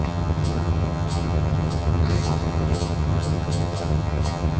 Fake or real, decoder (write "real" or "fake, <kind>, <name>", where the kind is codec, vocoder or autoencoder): fake, vocoder, HiFi-GAN